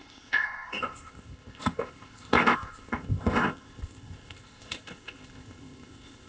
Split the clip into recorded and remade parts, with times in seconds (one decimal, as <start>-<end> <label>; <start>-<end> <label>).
0.0-6.3 remade